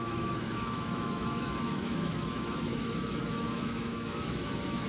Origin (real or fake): fake